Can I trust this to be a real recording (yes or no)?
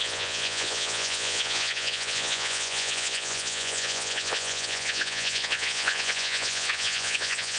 no